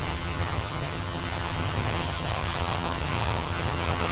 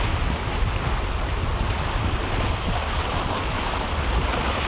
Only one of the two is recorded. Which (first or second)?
second